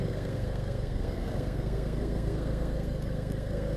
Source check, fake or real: fake